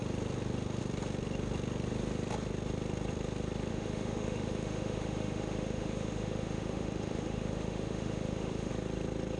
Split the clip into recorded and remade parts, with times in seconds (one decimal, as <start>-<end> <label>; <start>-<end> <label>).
0.0-3.7 recorded; 3.7-8.7 remade; 8.7-9.4 recorded